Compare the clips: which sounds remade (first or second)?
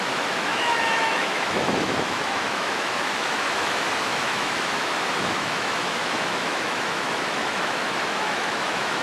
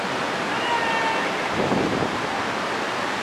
first